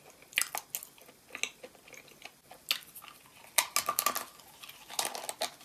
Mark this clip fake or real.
real